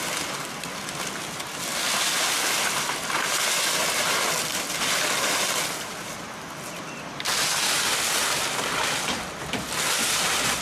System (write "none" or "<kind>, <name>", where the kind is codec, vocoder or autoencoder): none